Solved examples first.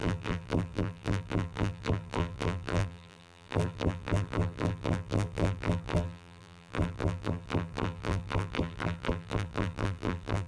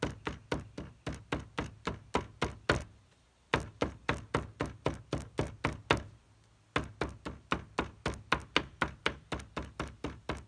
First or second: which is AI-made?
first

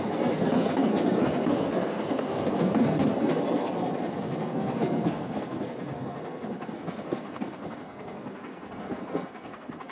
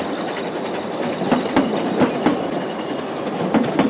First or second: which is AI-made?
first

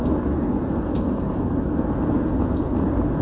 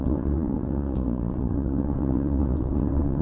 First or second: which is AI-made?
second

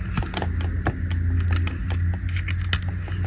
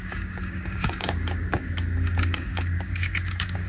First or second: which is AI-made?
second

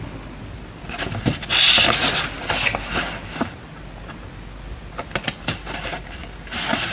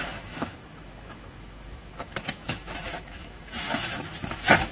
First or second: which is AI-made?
second